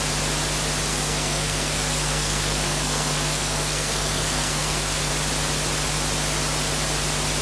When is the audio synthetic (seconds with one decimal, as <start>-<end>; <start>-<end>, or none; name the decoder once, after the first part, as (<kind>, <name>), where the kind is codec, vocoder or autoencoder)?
0.9-5.1 (codec, SNAC)